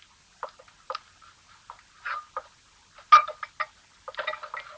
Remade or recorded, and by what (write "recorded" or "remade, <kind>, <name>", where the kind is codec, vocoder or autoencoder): recorded